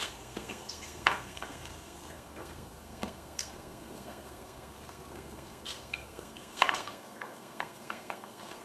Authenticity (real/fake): fake